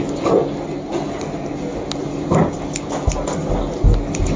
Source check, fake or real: real